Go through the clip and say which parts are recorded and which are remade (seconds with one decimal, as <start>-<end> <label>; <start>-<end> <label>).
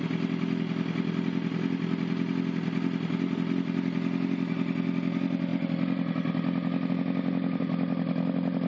0.0-8.7 recorded